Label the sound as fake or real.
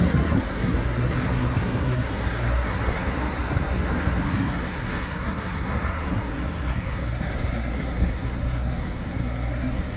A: fake